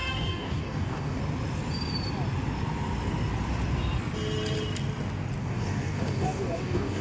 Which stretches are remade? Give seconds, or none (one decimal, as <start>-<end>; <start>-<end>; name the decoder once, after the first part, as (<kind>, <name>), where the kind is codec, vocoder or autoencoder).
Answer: 0.0-1.2 (codec, DAC); 5.4-7.0